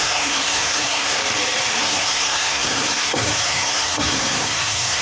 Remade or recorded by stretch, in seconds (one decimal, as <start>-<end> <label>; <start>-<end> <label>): 0.0-1.2 remade; 1.2-1.8 recorded; 1.8-5.0 remade